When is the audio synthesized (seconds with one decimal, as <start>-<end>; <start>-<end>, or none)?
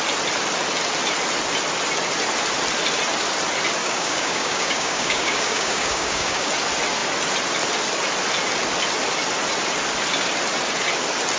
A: 3.8-6.5